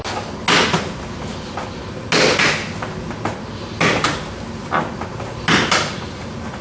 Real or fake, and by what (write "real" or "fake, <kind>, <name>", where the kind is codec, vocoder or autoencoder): real